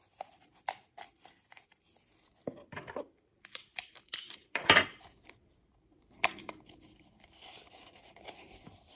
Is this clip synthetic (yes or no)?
yes